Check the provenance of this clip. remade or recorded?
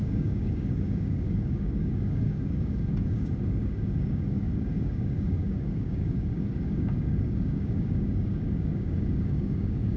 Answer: remade